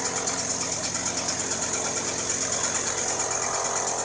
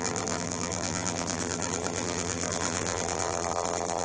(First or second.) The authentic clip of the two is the first